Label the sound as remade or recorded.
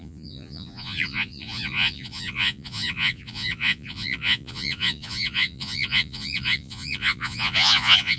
remade